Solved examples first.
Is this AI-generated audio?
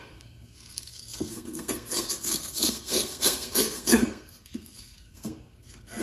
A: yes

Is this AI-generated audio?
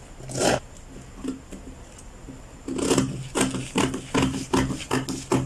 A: no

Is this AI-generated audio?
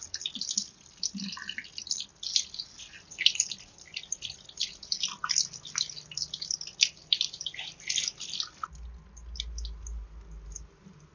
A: no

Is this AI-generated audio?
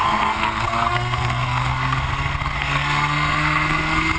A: yes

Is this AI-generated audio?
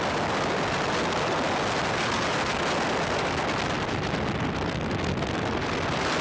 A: no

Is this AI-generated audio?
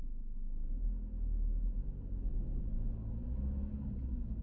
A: no